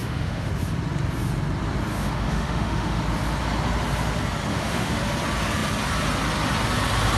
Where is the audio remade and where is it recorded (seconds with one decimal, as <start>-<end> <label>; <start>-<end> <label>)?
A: 0.0-0.5 remade; 0.5-1.9 recorded; 1.9-3.0 remade; 3.0-4.5 recorded; 4.5-5.0 remade; 5.0-7.2 recorded